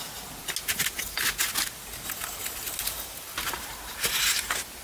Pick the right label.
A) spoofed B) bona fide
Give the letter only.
B